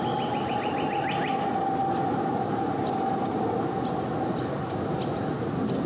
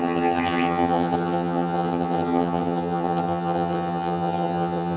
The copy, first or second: second